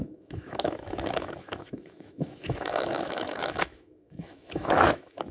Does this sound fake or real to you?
fake